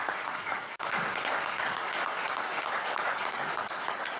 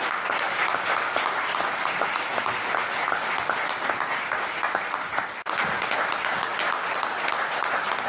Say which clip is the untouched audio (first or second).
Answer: second